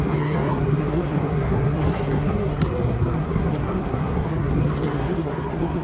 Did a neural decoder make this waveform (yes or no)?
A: yes